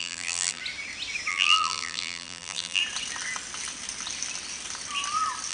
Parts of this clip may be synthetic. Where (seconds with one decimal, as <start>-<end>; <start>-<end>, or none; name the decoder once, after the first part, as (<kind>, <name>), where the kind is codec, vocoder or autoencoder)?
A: 0.0-0.6 (vocoder, BigVGAN v2); 1.3-2.8